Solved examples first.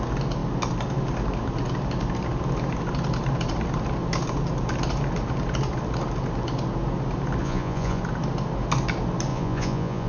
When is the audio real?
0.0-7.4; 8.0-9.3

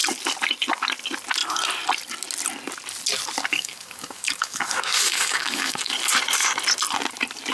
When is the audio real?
0.0-3.5; 5.9-7.5

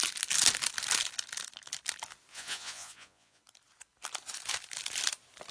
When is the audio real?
0.0-2.3; 3.4-5.5

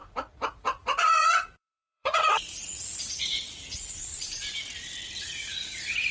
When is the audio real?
4.1-5.2

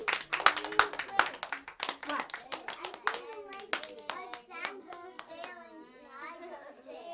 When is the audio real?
0.0-4.7; 5.3-7.1

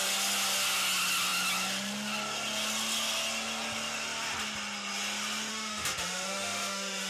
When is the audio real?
0.0-5.5